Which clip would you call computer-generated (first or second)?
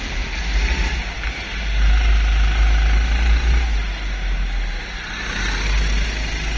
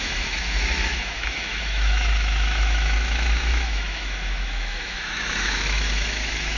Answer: second